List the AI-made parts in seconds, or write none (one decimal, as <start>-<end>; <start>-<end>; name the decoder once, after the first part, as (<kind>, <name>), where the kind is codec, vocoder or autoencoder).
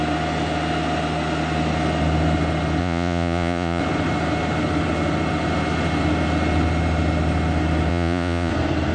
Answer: 2.8-3.8 (vocoder, Vocos); 7.9-8.5